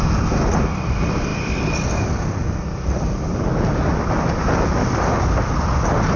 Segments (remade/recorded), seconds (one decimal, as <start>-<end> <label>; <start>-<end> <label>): 0.0-6.2 recorded